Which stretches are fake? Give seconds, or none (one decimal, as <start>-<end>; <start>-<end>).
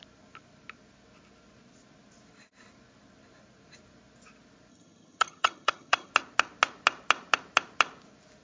4.7-6.1